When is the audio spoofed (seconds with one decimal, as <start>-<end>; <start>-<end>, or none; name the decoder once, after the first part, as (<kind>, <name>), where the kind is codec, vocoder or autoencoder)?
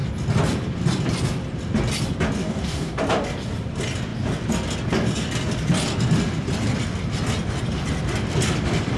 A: 2.4-3.0 (codec, DAC)